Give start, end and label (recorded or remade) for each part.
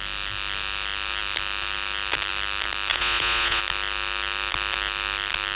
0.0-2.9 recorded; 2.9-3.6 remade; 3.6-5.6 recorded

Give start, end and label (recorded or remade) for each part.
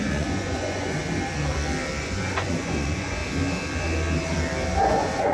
0.0-1.0 remade; 1.0-2.0 recorded; 2.0-3.2 remade; 3.2-4.8 recorded; 4.8-5.3 remade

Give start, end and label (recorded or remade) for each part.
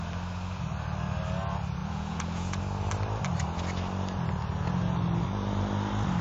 0.0-1.8 recorded; 1.8-2.6 remade; 2.6-6.2 recorded